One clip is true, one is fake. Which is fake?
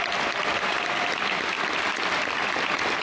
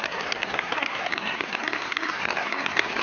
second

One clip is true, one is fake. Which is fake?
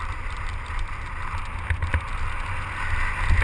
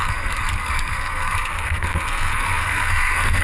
second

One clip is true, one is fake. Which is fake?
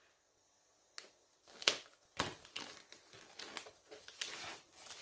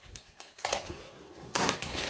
second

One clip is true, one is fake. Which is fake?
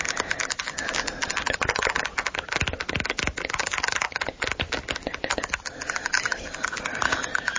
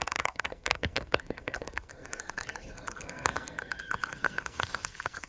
second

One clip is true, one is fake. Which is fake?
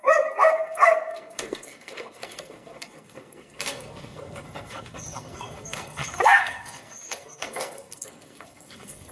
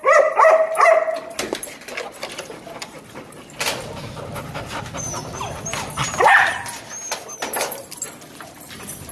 first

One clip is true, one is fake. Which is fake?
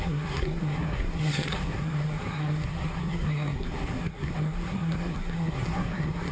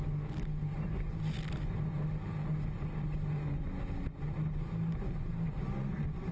first